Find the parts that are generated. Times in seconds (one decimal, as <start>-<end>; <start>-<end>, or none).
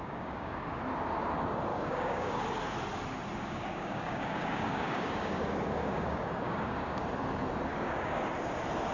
0.0-0.8; 1.7-2.4; 3.4-7.0; 7.7-8.2